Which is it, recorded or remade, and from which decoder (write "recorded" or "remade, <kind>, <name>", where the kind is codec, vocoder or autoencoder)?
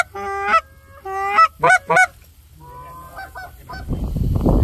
recorded